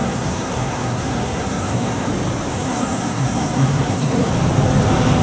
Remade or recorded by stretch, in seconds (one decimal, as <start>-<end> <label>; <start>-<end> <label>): 0.0-2.1 remade; 2.1-2.5 recorded; 2.5-4.3 remade; 4.3-5.2 recorded